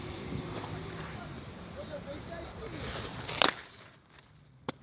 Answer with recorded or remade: remade